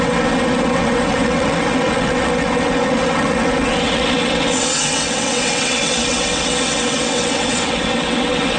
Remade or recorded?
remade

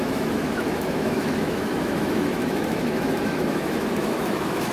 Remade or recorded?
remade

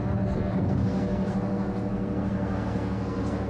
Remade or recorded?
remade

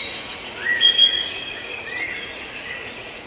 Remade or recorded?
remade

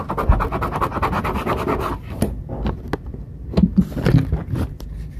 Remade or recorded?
recorded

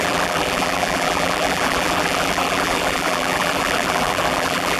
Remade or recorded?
remade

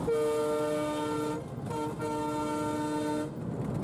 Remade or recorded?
recorded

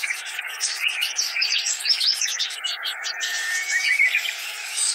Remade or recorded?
remade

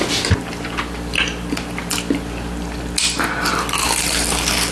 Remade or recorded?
recorded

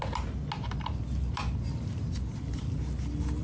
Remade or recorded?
recorded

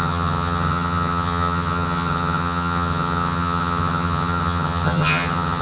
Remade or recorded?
remade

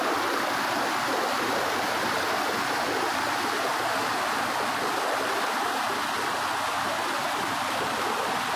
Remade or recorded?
recorded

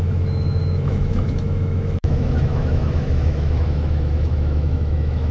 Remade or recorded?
remade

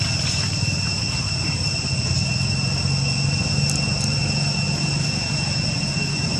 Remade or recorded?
recorded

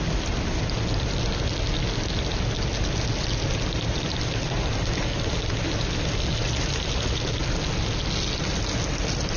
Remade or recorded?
recorded